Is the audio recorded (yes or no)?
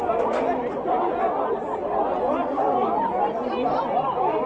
yes